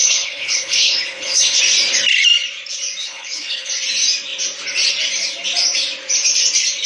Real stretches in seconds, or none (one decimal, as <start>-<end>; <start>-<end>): 1.6-3.0; 3.7-6.9